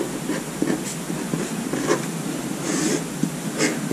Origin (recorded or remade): recorded